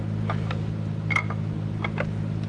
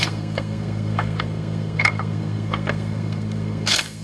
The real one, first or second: first